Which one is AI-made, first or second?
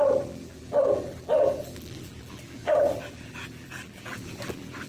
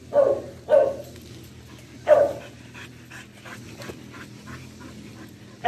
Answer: first